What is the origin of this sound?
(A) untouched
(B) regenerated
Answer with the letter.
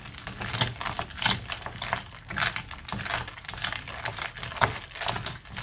A